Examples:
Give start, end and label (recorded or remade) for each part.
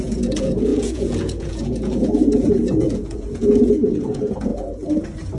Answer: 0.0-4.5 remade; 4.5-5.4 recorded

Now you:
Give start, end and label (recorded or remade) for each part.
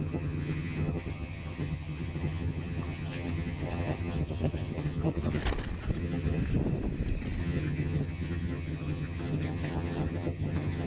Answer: 0.0-5.4 remade; 5.4-6.0 recorded; 6.0-6.4 remade; 6.4-7.4 recorded; 7.4-10.9 remade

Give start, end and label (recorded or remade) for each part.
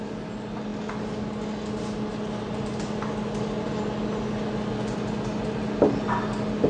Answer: 0.0-6.7 recorded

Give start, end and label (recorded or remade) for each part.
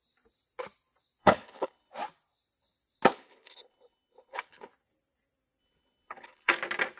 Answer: 0.0-1.2 recorded; 1.2-1.9 remade; 1.9-3.1 recorded; 3.1-4.7 remade; 4.7-5.6 recorded; 5.6-6.5 remade; 6.5-7.0 recorded